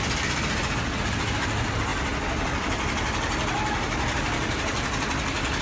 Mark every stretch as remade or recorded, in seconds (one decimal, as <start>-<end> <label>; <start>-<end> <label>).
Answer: 0.0-5.6 recorded